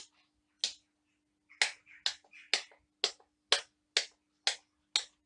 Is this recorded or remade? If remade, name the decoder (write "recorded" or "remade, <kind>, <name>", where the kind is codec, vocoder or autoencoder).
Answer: recorded